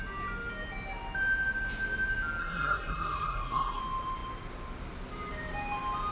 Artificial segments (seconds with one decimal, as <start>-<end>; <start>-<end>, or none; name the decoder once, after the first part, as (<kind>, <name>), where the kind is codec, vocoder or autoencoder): 2.4-3.8 (codec, SNAC)